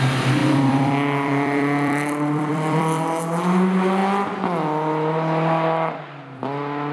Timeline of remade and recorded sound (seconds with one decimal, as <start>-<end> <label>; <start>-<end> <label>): 0.0-0.4 recorded; 0.4-3.2 remade; 3.2-6.9 recorded